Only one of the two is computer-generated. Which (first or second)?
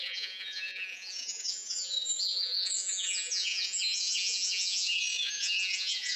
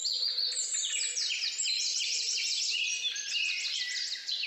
first